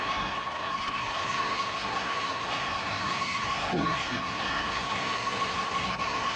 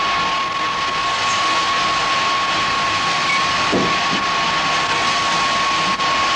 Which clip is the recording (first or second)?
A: second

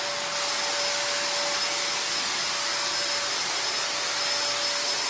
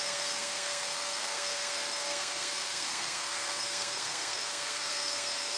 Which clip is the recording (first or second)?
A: first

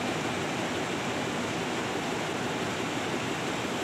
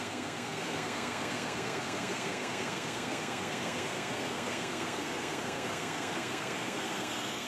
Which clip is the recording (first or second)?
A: first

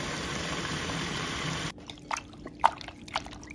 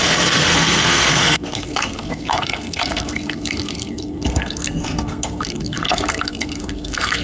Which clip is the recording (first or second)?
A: first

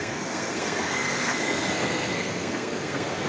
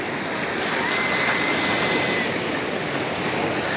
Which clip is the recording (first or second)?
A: second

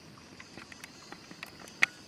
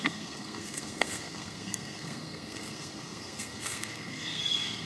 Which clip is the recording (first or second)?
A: first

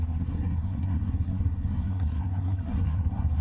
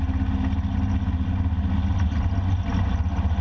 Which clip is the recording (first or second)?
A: second